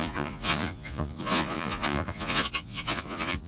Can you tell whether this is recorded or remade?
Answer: remade